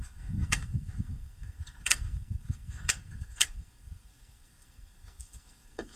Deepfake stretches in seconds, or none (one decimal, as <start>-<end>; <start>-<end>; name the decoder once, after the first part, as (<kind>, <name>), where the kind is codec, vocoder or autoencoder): 0.0-6.0 (codec, SNAC)